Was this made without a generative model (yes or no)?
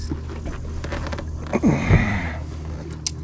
yes